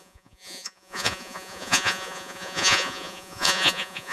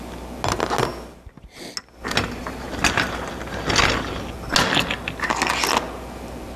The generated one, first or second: first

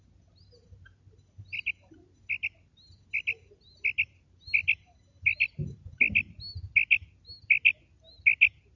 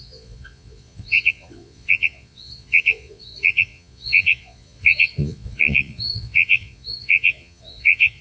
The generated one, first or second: second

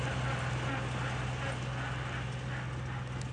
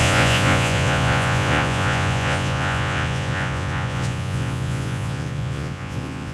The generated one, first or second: second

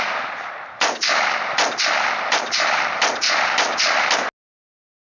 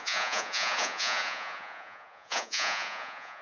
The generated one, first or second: second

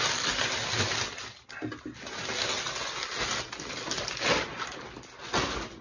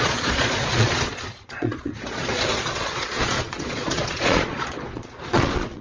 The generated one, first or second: second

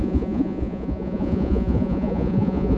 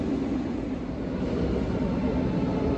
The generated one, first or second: first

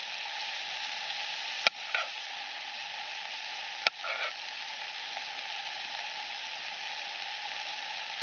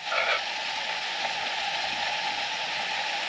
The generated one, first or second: second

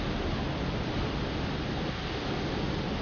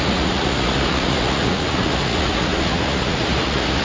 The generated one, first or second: second